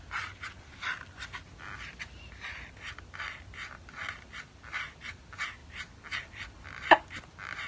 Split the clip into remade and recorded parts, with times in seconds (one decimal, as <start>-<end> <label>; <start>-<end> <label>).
0.0-7.7 recorded